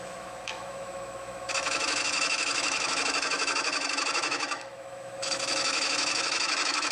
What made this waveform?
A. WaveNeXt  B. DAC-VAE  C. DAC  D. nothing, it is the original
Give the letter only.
B